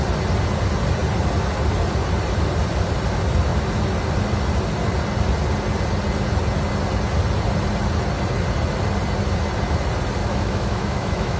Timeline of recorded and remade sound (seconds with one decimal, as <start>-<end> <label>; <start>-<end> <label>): 0.0-10.2 recorded; 10.2-11.4 remade